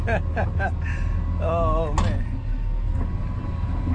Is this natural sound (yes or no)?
yes